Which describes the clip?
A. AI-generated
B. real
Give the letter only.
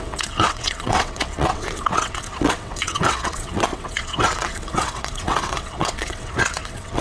A